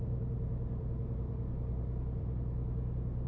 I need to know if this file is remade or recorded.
remade